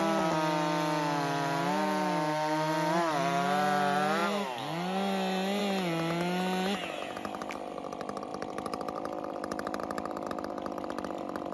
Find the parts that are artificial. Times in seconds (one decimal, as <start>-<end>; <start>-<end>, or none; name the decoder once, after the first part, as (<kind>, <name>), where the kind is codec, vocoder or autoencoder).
8.3-10.3 (vocoder, BigVGAN v2)